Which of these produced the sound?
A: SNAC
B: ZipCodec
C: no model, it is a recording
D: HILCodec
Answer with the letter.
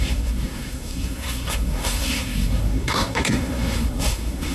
A